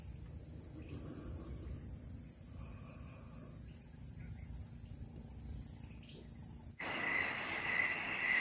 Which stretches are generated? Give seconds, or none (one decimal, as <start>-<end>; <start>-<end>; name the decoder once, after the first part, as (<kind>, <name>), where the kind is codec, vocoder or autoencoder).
none